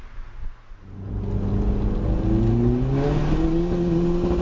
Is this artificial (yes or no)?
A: no